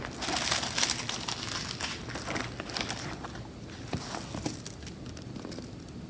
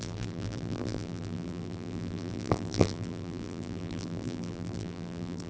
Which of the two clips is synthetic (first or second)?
second